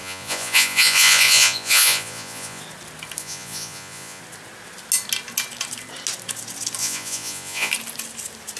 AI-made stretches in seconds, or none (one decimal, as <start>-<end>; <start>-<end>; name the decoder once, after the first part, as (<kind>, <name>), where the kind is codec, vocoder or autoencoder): 0.0-2.6 (vocoder, Vocos); 3.2-4.2; 6.8-7.7